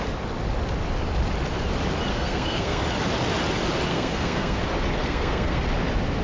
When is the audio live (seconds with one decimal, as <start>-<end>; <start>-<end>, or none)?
0.0-2.1; 2.8-3.9; 4.6-5.0; 5.6-6.2